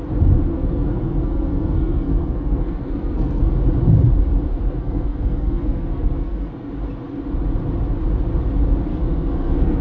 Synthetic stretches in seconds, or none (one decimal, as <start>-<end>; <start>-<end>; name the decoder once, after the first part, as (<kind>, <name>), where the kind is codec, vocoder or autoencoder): 0.5-3.5 (codec, SNAC); 4.5-6.7; 8.9-9.8